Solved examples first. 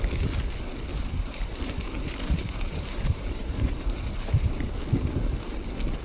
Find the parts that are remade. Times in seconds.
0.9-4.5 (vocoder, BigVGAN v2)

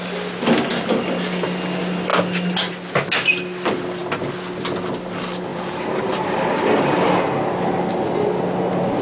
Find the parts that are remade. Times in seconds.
5.5-7.1 (vocoder, BigVGAN v2)

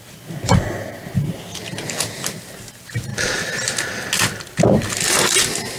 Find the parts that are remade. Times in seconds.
none

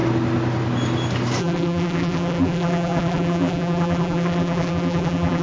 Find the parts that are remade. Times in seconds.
1.4-5.4 (vocoder, BigVGAN v2)

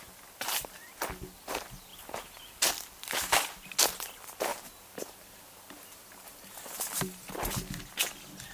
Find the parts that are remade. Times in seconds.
1.9-2.7 (vocoder, BigVGAN v2); 4.5-7.7

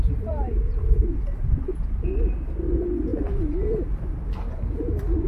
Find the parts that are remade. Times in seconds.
0.0-1.7 (vocoder, BigVGAN v2); 2.7-5.3

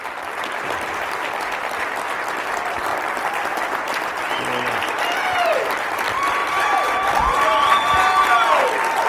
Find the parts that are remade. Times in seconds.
6.4-7.1 (vocoder, BigVGAN v2)